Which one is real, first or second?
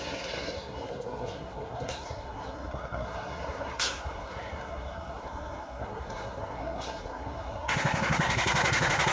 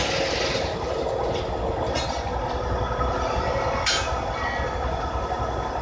second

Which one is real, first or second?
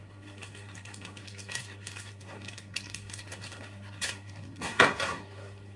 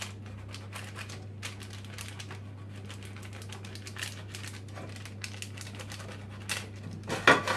second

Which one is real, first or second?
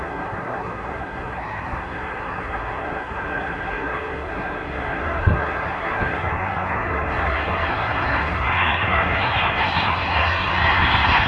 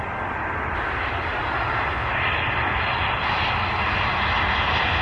second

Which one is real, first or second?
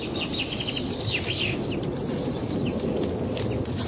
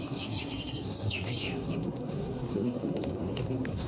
first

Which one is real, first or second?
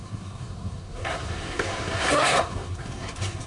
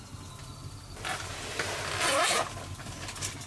second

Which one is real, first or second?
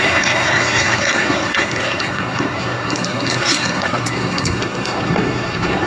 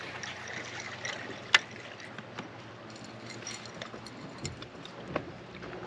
second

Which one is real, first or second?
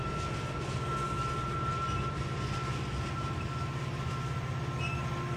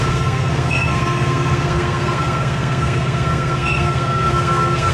first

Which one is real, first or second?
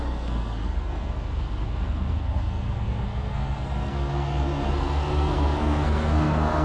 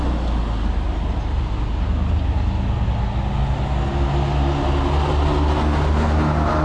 second